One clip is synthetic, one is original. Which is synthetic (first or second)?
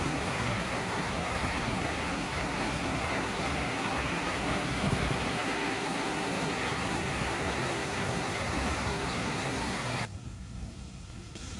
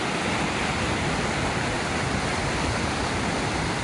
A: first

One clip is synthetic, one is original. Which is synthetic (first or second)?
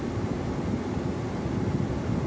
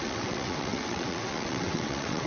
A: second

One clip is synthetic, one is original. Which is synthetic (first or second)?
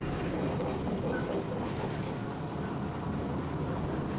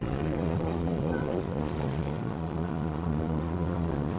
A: second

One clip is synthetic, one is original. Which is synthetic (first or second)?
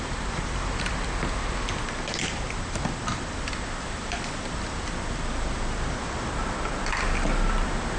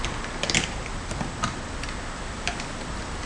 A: first